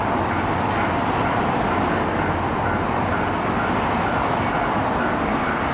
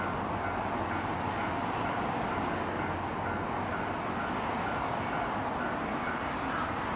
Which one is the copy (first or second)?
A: first